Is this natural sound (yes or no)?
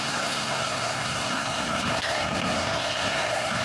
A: no